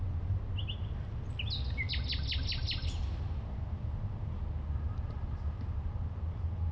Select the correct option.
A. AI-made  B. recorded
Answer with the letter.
B